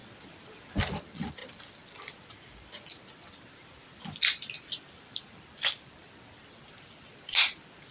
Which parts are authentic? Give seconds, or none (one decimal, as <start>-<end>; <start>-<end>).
0.0-7.9